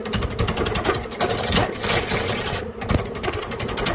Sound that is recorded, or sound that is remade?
recorded